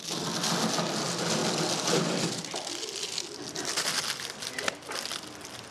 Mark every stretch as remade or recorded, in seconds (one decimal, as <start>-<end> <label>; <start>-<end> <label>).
0.0-5.7 recorded